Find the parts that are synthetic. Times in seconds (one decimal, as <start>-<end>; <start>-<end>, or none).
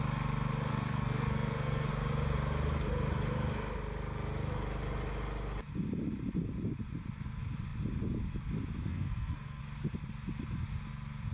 0.7-1.9; 8.9-9.6